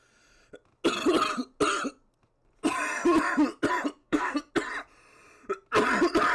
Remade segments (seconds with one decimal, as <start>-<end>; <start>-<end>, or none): 4.0-4.5